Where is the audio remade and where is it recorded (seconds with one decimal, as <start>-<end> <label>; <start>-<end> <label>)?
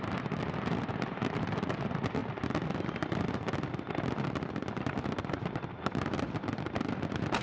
0.0-7.4 recorded